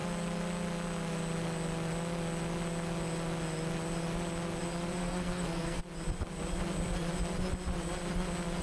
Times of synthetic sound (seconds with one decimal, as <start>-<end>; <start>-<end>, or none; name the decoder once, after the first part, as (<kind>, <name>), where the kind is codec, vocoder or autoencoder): 5.0-5.8 (codec, SNAC)